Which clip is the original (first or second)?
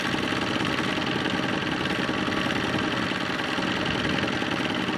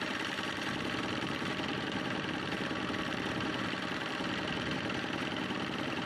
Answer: first